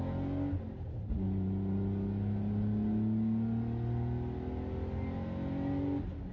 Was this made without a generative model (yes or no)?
yes